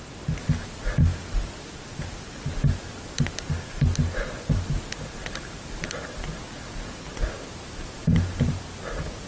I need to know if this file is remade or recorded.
recorded